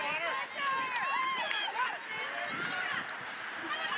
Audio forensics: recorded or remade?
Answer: recorded